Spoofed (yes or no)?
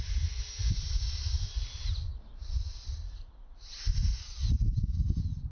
no